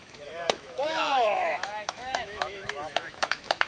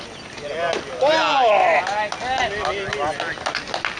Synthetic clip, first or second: first